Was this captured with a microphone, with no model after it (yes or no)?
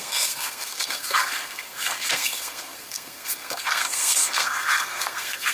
no